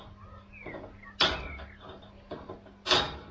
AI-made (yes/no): no